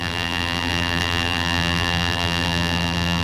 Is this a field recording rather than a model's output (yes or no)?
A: no